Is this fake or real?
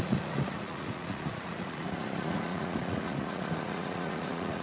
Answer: fake